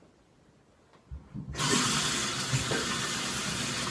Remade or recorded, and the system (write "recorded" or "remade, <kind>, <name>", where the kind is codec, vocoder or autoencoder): recorded